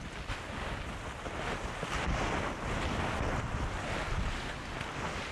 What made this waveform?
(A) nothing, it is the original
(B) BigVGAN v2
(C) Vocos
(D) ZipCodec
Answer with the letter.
A